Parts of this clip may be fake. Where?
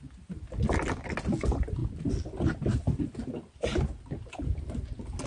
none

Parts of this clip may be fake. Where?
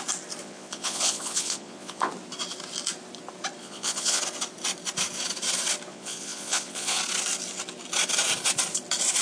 0.4-2.1 (vocoder, Vocos); 3.6-4.2; 5.9-7.0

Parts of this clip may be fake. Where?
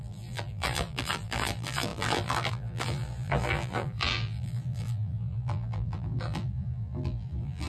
0.0-7.7 (vocoder, BigVGAN v2)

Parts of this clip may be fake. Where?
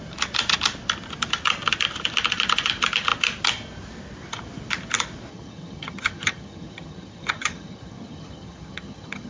5.3-9.3 (vocoder, HiFi-GAN)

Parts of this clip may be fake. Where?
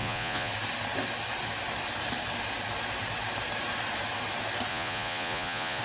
0.0-0.5 (vocoder, Vocos); 4.7-5.8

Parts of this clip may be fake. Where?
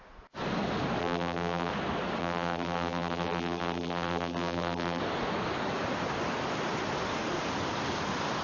1.0-1.7 (vocoder, BigVGAN v2); 2.2-5.0